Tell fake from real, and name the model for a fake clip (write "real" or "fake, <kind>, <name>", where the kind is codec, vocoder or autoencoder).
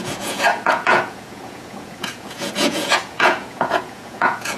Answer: fake, vocoder, Vocos